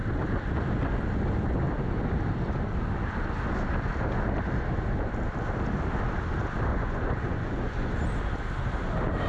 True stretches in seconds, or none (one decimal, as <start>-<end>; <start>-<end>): 0.0-6.7; 8.0-9.3